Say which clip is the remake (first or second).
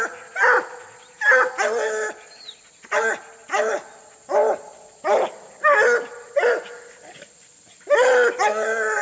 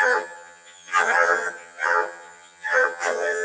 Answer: second